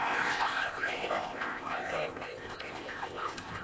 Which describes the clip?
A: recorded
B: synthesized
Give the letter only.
B